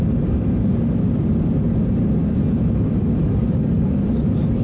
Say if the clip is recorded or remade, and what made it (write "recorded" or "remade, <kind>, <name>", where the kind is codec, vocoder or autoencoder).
recorded